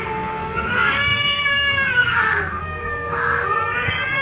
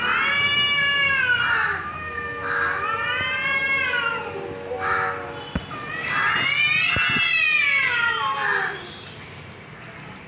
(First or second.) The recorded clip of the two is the second